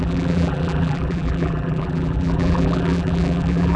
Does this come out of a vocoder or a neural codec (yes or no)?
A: yes